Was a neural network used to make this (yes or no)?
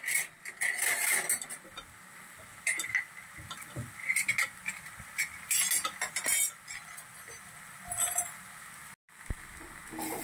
no